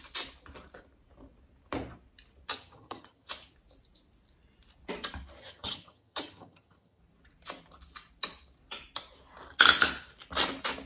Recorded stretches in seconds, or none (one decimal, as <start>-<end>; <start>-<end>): 0.0-2.5; 3.3-5.4; 7.0-10.9